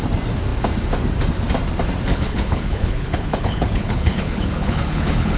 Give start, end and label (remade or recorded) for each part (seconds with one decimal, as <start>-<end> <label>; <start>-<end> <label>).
0.0-2.1 recorded; 2.1-5.4 remade